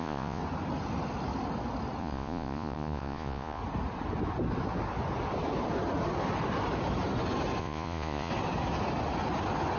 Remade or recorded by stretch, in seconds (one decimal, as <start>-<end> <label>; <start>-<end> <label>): 0.0-0.4 remade; 0.4-2.0 recorded; 2.0-3.6 remade; 3.6-7.6 recorded; 7.6-8.3 remade; 8.3-9.8 recorded